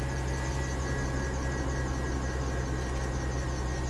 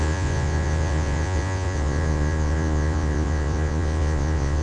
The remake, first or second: second